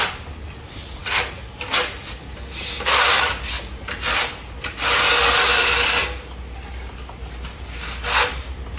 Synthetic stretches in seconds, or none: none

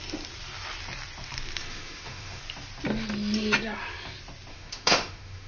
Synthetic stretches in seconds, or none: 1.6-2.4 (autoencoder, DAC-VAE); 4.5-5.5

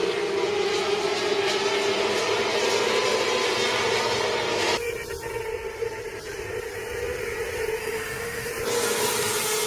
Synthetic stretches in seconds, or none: 7.8-8.5 (autoencoder, DAC-VAE)

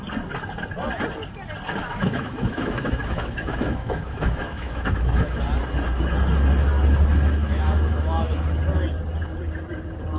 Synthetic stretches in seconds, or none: 1.8-5.4 (autoencoder, DAC-VAE); 7.4-8.4